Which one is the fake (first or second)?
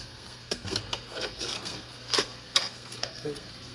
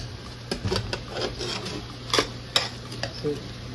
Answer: first